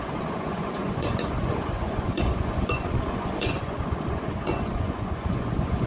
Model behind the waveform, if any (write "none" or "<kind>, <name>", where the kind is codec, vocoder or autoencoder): vocoder, Vocos